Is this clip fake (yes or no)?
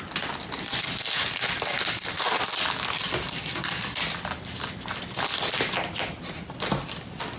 no